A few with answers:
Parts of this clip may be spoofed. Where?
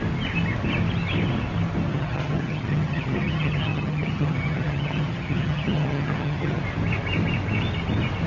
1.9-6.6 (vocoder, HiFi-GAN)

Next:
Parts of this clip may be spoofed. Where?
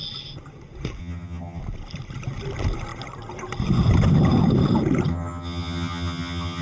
1.0-1.6 (vocoder, HiFi-GAN); 5.1-6.6